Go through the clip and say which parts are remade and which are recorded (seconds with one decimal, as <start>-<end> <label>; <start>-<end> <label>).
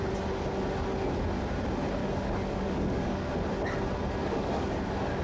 0.0-2.0 recorded; 2.0-3.3 remade; 3.3-4.2 recorded; 4.2-4.7 remade; 4.7-5.2 recorded